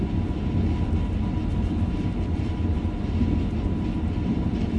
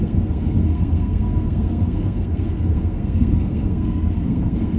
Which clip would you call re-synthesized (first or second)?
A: second